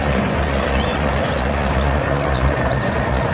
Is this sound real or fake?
fake